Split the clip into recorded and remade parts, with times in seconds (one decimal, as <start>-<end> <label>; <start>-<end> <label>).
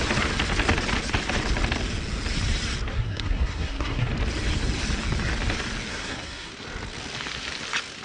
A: 0.0-2.9 recorded; 2.9-4.1 remade; 4.1-5.9 recorded; 5.9-6.5 remade; 6.5-8.0 recorded